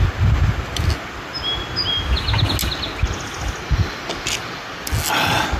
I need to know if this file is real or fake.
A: real